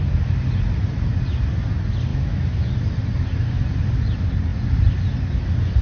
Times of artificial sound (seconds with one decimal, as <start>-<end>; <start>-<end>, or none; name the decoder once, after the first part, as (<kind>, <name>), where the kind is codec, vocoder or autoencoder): 2.1-2.7 (autoencoder, DAC-VAE)